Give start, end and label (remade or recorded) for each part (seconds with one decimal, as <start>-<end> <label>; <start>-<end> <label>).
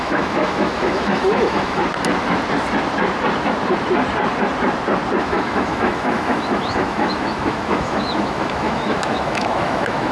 0.0-1.8 remade; 1.8-5.2 recorded; 5.2-10.1 remade